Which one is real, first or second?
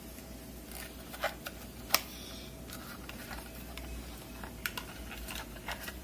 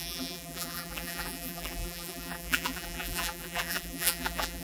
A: first